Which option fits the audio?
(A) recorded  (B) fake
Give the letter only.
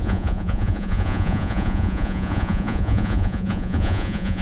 B